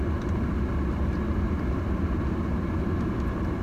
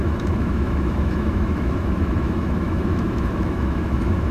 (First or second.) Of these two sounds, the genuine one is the first